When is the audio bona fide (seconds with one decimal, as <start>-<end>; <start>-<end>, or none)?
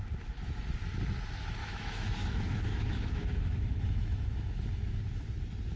0.0-1.6; 5.0-5.8